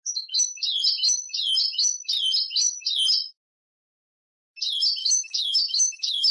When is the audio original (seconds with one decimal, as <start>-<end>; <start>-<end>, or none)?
0.0-5.0